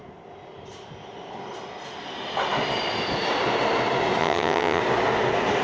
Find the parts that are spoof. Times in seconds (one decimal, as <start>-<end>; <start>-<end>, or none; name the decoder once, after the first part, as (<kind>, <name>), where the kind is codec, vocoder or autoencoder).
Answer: 4.2-4.8 (vocoder, HiFi-GAN)